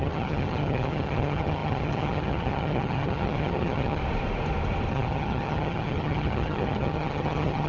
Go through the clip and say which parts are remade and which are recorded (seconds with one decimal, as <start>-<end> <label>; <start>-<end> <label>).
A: 0.0-4.0 remade; 4.0-4.9 recorded; 4.9-7.7 remade